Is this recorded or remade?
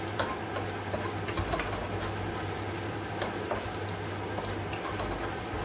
recorded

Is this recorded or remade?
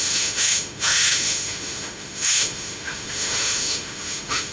remade